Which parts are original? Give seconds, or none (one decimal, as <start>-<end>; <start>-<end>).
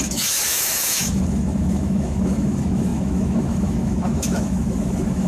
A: none